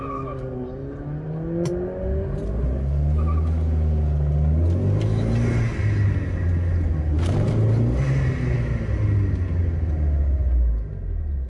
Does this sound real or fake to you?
real